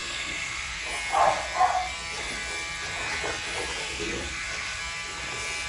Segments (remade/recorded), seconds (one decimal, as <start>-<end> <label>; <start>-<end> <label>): 0.0-0.8 remade; 0.8-3.8 recorded; 3.8-4.8 remade; 4.8-5.7 recorded